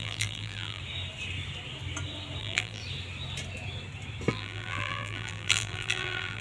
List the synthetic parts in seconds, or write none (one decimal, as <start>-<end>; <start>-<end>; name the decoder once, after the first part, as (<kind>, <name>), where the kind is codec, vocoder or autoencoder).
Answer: 0.0-0.8 (vocoder, BigVGAN v2); 2.4-2.8; 4.3-6.4